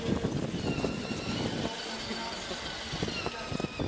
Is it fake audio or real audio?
real